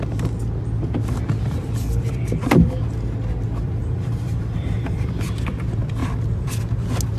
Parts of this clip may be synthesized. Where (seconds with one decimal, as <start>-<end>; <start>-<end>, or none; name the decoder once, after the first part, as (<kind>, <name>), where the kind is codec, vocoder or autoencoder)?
3.8-5.1 (vocoder, BigVGAN v2)